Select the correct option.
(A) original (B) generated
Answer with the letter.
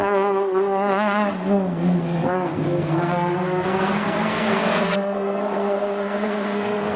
B